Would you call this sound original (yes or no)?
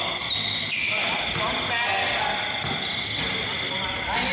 yes